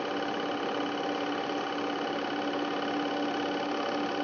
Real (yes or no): yes